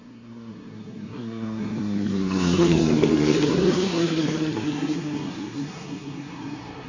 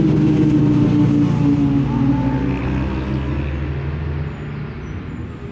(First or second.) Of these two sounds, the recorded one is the second